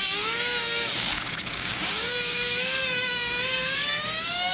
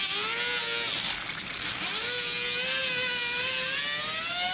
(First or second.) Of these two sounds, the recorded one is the second